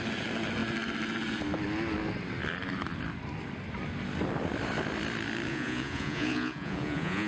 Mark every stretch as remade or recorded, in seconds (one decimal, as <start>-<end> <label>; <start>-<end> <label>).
0.0-5.5 recorded; 5.5-7.3 remade